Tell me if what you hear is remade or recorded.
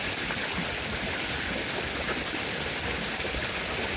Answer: recorded